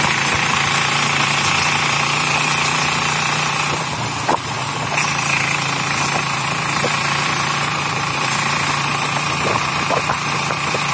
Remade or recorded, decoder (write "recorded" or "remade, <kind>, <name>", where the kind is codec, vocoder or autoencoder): remade, vocoder, BigVGAN v2